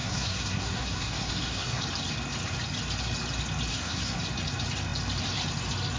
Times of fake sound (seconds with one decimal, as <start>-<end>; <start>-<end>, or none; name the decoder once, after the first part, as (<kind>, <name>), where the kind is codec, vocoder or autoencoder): 0.0-1.8 (codec, SNAC); 3.7-4.2